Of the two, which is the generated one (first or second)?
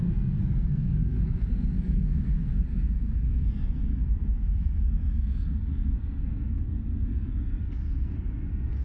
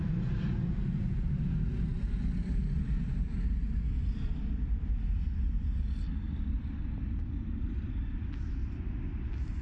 first